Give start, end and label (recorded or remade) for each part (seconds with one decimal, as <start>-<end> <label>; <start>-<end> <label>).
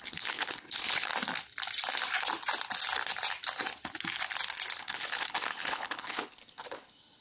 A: 0.0-1.1 remade; 1.1-4.8 recorded; 4.8-7.2 remade